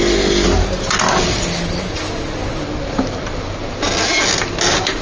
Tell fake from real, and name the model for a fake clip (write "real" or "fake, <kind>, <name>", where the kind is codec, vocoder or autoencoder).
real